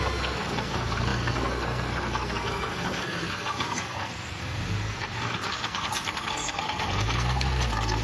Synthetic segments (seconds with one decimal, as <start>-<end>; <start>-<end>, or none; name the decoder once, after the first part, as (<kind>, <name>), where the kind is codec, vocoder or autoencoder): 0.0-8.0 (codec, SNAC)